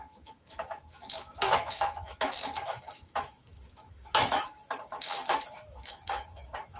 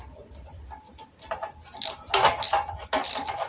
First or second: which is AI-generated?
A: first